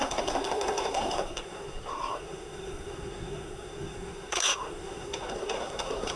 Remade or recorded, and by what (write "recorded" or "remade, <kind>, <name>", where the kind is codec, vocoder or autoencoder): remade, codec, SNAC